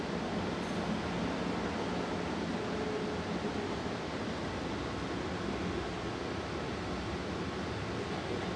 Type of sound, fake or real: real